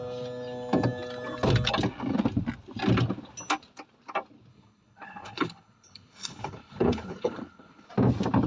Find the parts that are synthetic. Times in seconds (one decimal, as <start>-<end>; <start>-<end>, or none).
4.5-7.9